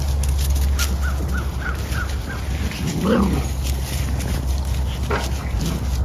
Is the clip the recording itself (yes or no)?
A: yes